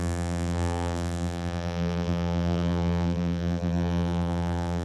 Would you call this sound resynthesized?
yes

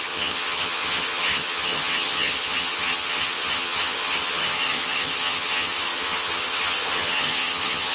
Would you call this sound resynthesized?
yes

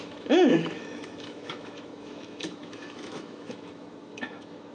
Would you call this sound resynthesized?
yes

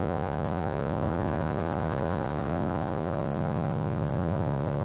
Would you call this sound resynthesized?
yes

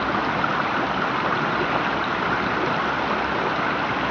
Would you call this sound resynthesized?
no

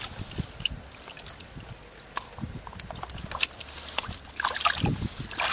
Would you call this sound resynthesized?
no